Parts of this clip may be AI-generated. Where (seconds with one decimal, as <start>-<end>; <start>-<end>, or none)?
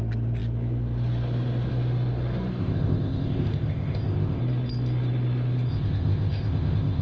2.6-4.4; 5.7-7.0